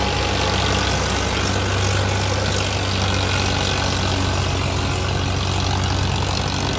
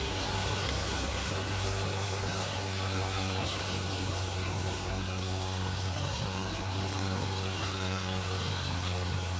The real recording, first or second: first